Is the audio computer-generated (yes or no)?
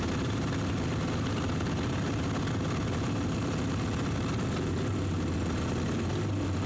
no